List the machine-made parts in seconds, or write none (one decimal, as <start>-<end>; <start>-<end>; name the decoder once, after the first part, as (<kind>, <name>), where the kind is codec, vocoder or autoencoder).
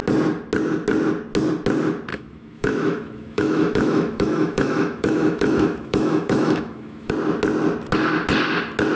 2.1-7.1 (autoencoder, DAC-VAE)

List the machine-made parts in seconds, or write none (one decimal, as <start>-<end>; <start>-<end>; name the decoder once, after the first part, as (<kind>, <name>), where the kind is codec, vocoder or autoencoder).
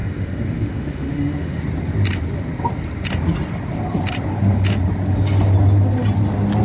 0.0-1.6 (autoencoder, DAC-VAE)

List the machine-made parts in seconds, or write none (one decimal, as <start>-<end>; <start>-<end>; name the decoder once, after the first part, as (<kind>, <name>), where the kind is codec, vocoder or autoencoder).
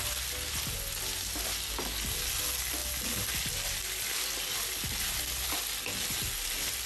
none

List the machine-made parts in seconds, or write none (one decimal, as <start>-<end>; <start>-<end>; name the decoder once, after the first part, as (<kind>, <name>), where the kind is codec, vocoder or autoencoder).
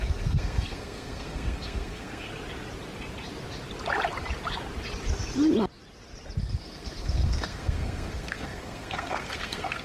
0.0-2.3 (codec, SNAC); 6.4-9.8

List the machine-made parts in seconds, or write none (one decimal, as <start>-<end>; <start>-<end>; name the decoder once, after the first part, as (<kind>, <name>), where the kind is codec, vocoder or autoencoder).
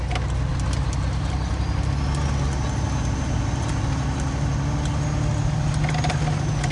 none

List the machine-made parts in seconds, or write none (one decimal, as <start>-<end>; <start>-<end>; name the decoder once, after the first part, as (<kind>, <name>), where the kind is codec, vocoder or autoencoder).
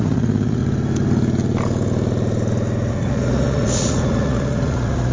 0.0-0.6 (vocoder, Vocos); 2.9-5.1